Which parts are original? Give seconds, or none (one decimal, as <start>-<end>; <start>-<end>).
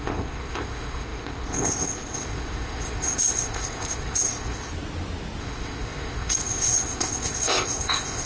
4.7-5.4